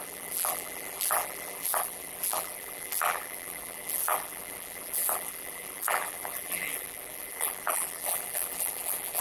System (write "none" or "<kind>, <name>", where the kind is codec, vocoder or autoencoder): vocoder, BigVGAN v2